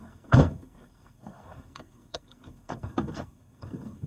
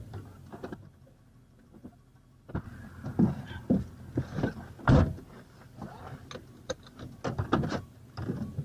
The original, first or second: second